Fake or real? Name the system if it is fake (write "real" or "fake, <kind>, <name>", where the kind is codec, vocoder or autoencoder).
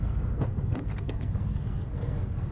fake, codec, SNAC